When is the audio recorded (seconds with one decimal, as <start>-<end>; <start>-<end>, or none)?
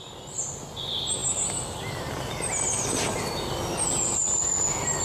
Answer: 0.0-5.0